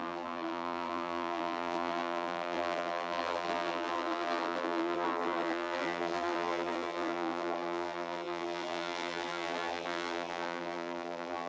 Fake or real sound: fake